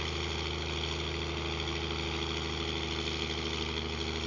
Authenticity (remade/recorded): recorded